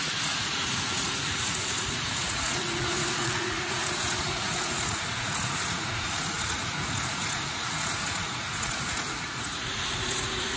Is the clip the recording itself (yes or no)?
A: no